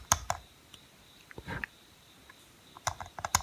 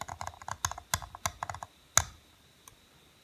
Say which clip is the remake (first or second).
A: first